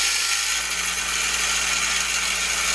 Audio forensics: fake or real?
real